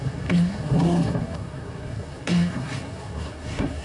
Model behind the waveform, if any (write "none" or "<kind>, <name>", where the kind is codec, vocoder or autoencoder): codec, SNAC